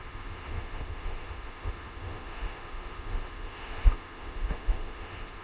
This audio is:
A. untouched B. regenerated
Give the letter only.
B